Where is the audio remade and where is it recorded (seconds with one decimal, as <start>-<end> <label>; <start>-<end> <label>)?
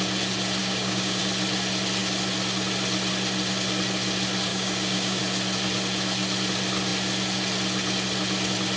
0.0-0.6 recorded; 0.6-1.2 remade; 1.2-4.5 recorded; 4.5-5.2 remade; 5.2-8.8 recorded